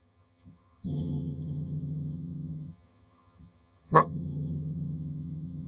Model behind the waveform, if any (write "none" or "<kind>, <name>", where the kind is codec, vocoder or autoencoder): vocoder, HiFi-GAN